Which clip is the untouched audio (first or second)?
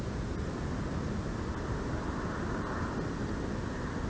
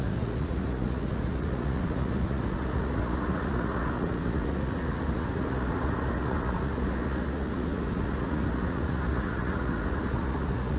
first